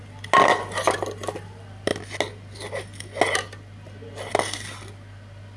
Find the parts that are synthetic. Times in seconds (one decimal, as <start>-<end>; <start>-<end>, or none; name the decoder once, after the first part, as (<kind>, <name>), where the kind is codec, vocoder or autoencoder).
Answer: none